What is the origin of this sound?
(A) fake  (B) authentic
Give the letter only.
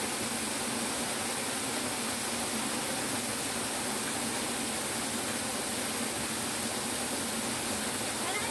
B